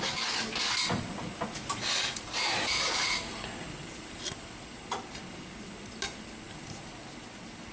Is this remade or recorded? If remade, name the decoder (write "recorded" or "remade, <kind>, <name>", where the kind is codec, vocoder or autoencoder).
recorded